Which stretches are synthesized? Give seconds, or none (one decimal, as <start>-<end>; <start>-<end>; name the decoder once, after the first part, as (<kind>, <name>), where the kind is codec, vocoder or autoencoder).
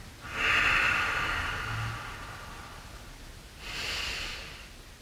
none